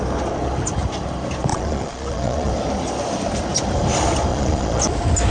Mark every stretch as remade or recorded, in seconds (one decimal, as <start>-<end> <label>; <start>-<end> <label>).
0.0-1.5 recorded; 1.5-2.5 remade; 2.5-4.3 recorded; 4.3-4.8 remade; 4.8-5.3 recorded